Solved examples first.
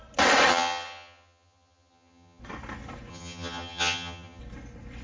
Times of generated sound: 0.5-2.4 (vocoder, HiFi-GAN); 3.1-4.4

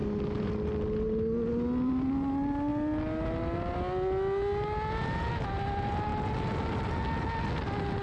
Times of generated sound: none

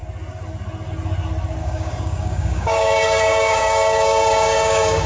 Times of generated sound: 1.6-5.1 (codec, DAC)

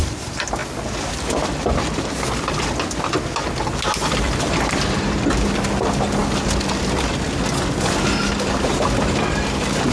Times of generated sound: none